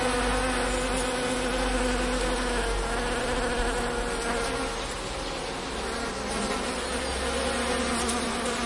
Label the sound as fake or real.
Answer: real